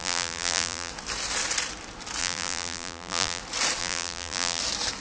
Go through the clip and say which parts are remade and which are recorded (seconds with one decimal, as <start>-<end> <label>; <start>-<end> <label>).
0.0-0.9 remade; 0.9-2.2 recorded; 2.2-3.4 remade; 3.4-3.8 recorded; 3.8-4.6 remade; 4.6-5.0 recorded